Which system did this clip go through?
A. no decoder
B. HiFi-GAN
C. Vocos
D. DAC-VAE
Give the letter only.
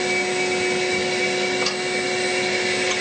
A